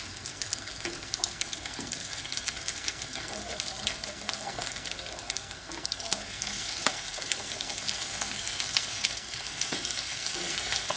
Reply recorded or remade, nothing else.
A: remade